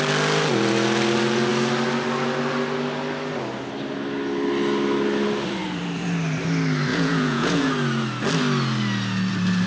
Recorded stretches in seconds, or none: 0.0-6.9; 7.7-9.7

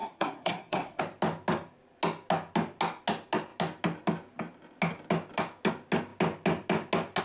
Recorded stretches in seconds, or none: 1.0-7.2

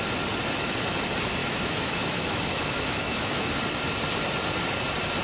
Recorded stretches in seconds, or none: 0.0-1.4; 3.5-5.2

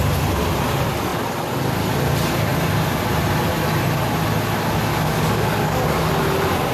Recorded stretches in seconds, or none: 0.0-4.9; 6.1-6.7

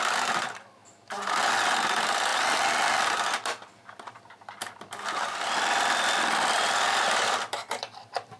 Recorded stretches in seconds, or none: 0.8-1.3